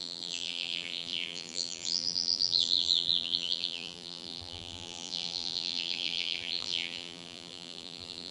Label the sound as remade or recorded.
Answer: remade